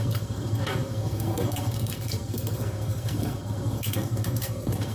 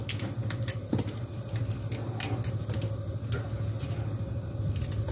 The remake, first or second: first